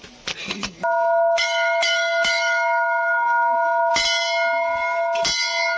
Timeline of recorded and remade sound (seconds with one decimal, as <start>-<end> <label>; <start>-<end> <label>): 0.0-0.4 recorded; 0.4-3.9 remade; 3.9-5.8 recorded